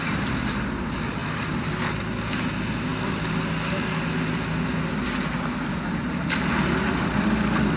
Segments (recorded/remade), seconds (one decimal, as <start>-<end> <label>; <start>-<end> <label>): 0.0-1.2 recorded; 1.2-1.8 remade; 1.8-7.8 recorded